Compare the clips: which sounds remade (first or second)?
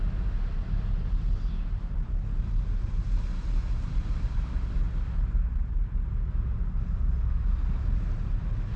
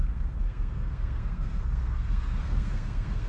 second